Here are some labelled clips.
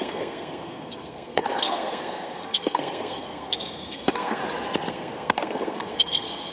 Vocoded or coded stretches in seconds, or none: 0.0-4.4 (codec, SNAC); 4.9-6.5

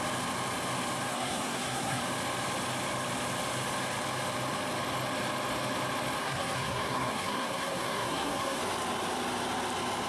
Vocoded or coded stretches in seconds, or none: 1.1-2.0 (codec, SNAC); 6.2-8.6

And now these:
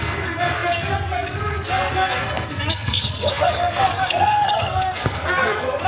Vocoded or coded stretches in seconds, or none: 0.0-5.9 (codec, SNAC)

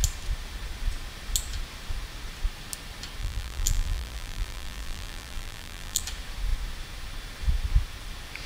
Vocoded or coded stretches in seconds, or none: 3.2-6.0 (vocoder, BigVGAN v2)

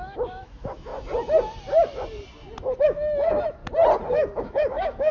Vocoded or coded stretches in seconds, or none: 0.0-0.9 (autoencoder, DAC-VAE); 2.8-3.6; 4.1-5.1